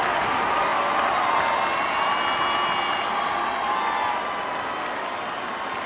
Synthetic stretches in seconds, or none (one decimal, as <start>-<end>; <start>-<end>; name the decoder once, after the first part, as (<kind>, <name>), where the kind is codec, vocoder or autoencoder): none